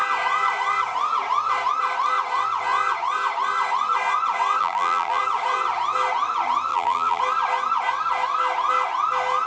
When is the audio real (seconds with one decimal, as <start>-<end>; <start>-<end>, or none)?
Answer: 0.0-4.6; 5.2-6.7; 7.2-9.5